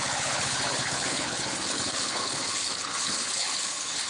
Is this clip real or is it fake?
fake